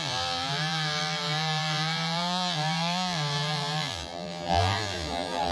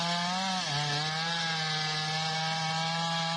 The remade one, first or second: first